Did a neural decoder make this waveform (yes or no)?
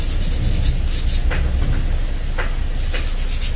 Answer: no